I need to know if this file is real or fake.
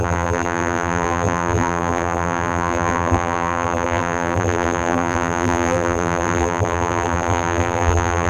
fake